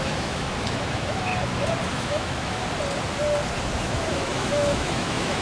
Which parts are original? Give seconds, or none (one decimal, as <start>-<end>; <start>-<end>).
1.3-1.9; 2.6-3.8